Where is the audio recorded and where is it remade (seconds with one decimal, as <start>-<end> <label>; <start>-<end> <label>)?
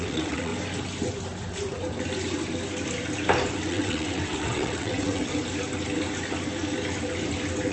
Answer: 0.0-0.5 remade; 0.5-3.7 recorded; 3.7-5.3 remade; 5.3-7.7 recorded